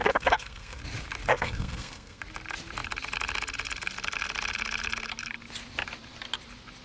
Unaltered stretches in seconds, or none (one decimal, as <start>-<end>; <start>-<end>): 0.8-1.3; 2.2-6.8

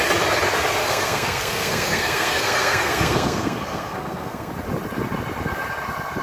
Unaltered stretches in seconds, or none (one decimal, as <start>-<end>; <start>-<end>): 0.0-0.8; 4.5-6.2

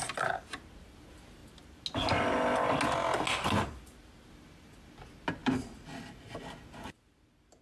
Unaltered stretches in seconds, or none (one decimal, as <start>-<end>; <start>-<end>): 0.0-7.6

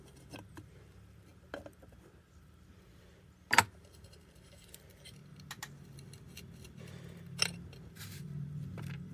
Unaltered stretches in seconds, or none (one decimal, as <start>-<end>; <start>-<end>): 1.3-3.6; 5.2-7.8

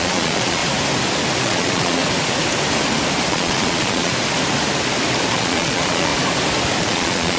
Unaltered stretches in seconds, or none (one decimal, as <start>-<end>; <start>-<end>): 0.6-1.4; 2.0-3.3; 4.1-5.3; 6.1-6.8

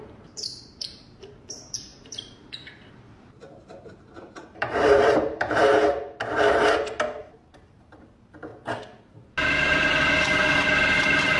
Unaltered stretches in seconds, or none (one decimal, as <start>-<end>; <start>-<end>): 5.6-7.2; 8.5-11.4

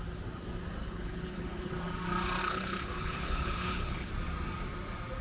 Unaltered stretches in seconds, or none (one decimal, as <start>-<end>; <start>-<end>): 0.0-0.8; 1.7-2.4; 4.1-5.2